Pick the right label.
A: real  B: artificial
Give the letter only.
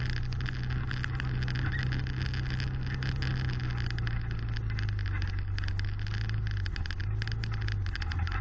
A